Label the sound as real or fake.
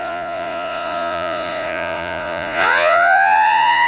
fake